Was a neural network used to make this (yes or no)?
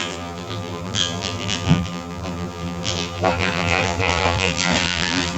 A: yes